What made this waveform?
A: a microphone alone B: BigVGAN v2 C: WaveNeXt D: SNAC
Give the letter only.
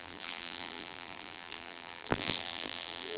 B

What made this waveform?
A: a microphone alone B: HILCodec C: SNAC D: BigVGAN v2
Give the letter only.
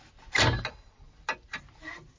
A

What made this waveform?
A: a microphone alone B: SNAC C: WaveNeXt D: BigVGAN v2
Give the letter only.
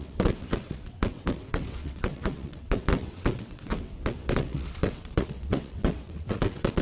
C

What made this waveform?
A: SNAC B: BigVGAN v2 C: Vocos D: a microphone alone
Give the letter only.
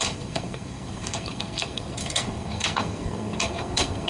A